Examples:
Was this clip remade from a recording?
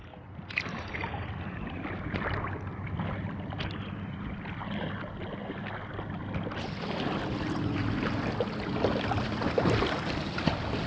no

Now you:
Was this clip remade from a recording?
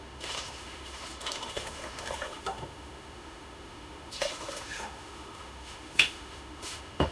yes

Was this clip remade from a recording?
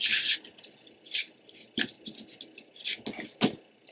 no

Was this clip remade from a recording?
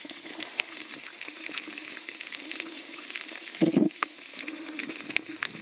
yes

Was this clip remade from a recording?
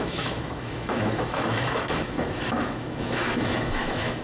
yes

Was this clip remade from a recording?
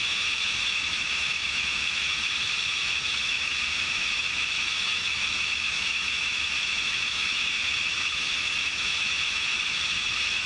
yes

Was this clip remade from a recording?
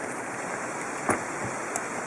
no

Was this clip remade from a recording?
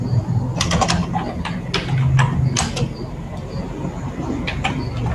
no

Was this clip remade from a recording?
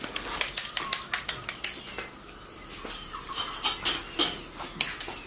no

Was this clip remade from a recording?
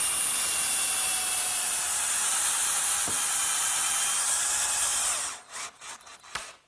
no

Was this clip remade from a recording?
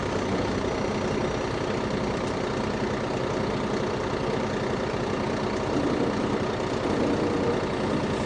no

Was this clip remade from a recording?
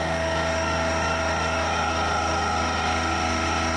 yes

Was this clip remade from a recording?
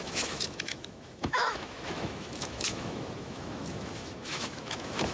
yes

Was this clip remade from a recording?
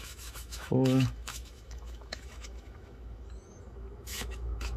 yes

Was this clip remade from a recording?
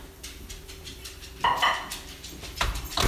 no